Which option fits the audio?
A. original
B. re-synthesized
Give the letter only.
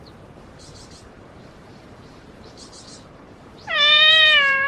B